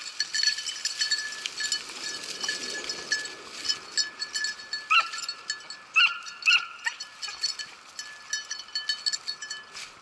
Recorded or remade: recorded